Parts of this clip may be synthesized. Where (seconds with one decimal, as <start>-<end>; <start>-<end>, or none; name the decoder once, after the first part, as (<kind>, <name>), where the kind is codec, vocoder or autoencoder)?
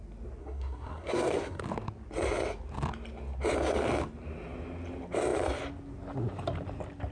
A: 0.4-1.6 (codec, SNAC)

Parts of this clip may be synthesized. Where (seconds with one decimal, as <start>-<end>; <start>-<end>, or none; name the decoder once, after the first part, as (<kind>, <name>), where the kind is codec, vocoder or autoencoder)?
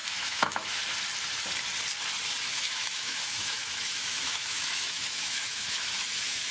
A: 0.0-0.8 (autoencoder, DAC-VAE); 2.5-6.5